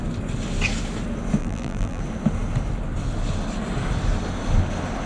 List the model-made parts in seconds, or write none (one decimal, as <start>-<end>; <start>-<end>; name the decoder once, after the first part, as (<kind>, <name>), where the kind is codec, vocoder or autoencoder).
1.4-2.0 (vocoder, BigVGAN v2)